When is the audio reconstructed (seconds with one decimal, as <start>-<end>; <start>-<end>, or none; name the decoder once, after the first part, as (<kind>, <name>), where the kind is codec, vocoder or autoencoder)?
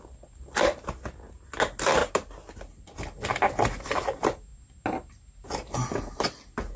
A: none